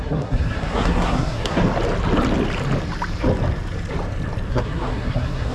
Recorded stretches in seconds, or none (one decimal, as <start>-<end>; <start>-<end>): 1.6-4.5